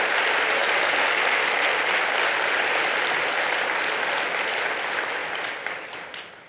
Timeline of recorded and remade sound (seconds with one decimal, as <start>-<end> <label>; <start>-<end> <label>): 0.0-5.2 recorded; 5.2-5.8 remade; 5.8-6.5 recorded